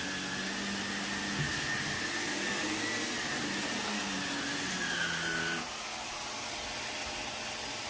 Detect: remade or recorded recorded